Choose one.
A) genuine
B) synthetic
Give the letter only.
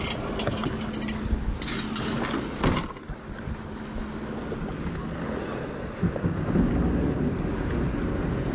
A